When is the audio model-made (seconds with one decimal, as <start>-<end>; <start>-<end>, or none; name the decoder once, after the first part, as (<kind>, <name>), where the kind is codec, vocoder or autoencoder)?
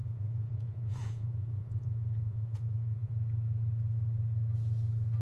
0.0-3.1 (vocoder, Vocos)